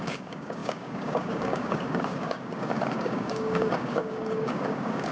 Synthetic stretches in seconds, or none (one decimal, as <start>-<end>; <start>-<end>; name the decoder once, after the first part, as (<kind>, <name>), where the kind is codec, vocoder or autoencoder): 0.0-5.1 (codec, DAC)